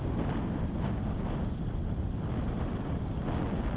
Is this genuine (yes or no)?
yes